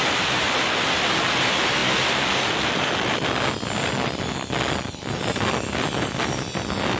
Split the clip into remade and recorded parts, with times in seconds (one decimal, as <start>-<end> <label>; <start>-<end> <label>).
0.0-7.0 recorded